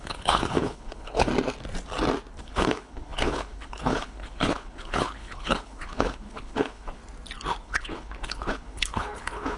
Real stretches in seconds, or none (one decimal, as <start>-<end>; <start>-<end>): 1.3-2.4; 7.0-7.6